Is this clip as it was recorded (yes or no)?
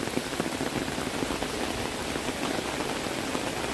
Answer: yes